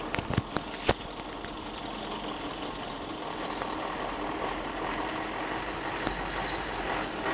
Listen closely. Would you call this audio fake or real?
real